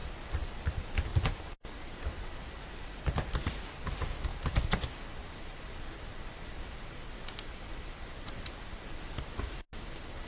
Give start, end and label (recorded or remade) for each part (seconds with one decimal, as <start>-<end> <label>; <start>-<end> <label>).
0.0-1.1 recorded; 1.1-3.9 remade; 3.9-10.3 recorded